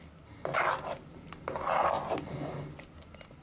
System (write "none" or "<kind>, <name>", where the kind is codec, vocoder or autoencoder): none